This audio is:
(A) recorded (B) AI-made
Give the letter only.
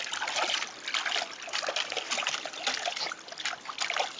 B